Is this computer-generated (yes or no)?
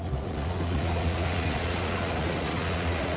yes